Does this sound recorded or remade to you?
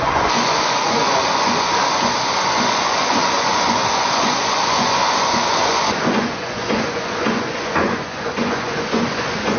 remade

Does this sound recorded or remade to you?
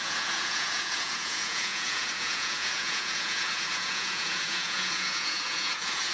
remade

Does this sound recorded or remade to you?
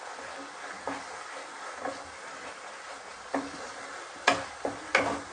recorded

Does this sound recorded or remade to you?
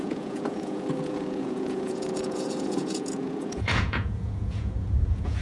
remade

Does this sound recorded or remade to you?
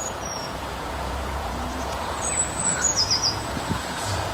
remade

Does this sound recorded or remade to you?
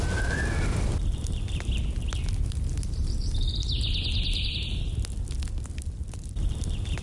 recorded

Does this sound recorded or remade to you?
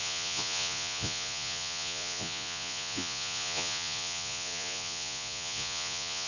remade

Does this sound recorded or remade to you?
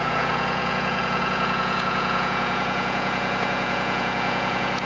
remade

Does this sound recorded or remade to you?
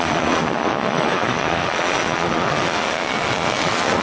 remade